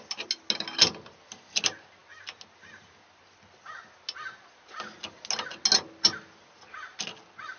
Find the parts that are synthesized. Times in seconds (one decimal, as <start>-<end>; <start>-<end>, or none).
none